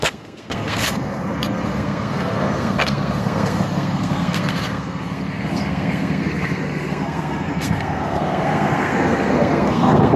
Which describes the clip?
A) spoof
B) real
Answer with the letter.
A